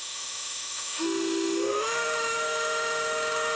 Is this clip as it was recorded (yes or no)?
no